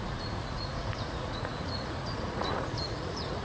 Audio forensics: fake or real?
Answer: fake